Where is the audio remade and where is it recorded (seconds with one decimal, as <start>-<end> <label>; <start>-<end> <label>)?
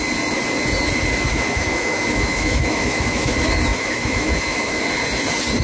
0.0-1.3 recorded; 1.3-3.3 remade; 3.3-3.7 recorded; 3.7-4.8 remade; 4.8-5.6 recorded